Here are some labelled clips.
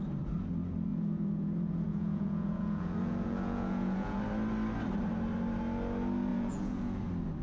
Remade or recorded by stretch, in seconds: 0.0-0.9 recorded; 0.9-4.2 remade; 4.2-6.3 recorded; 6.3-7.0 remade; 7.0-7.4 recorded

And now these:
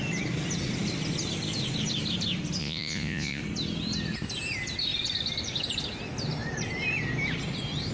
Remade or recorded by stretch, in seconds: 0.0-2.6 recorded; 2.6-3.4 remade; 3.4-7.9 recorded

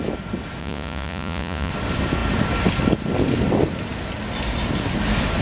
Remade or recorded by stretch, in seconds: 0.0-0.6 recorded; 0.6-1.7 remade; 1.7-5.4 recorded

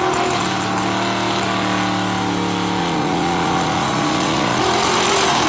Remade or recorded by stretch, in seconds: 0.0-2.8 recorded; 2.8-4.6 remade; 4.6-5.5 recorded

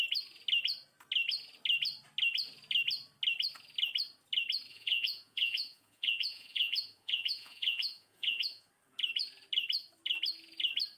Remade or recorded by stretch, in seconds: 0.0-4.7 recorded; 4.7-8.7 remade; 8.7-11.0 recorded

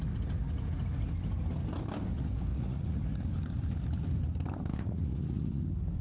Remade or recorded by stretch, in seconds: 0.0-2.5 recorded; 2.5-3.0 remade; 3.0-4.7 recorded; 4.7-5.6 remade; 5.6-6.0 recorded

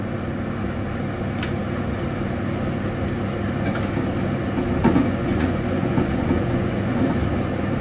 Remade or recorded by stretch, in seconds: 0.0-4.8 recorded; 4.8-7.0 remade; 7.0-7.8 recorded

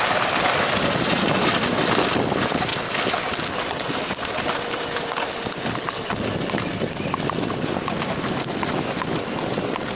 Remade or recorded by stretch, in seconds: 0.0-9.9 recorded